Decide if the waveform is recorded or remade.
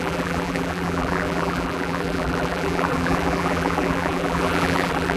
remade